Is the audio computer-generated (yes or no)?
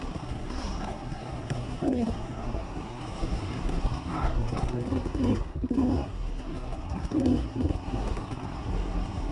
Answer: yes